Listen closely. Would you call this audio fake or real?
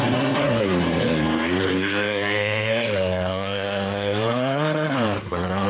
fake